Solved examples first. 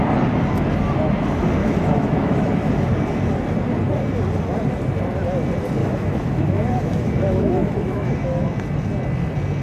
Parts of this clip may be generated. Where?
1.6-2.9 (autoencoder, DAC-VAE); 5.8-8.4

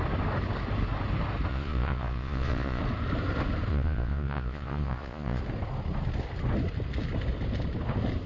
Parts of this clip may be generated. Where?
1.5-2.8 (vocoder, Vocos); 3.7-5.4

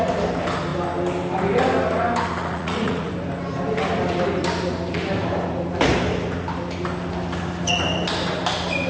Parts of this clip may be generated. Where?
2.4-3.1 (vocoder, Vocos)

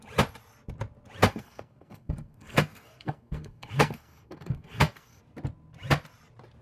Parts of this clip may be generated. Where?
1.2-5.2 (codec, SNAC)

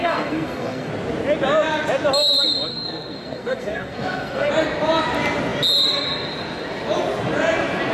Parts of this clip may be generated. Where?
0.0-0.9 (codec, SNAC); 2.7-4.5

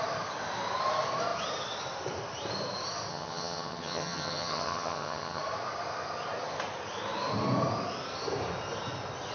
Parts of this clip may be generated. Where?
3.1-5.4 (vocoder, HiFi-GAN)